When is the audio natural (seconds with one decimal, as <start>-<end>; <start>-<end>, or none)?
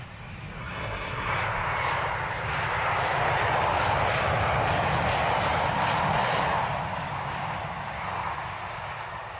0.0-0.6; 1.3-9.4